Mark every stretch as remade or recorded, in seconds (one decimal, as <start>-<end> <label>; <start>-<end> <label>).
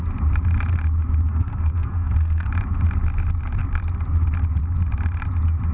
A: 0.0-1.3 recorded; 1.3-2.5 remade; 2.5-5.7 recorded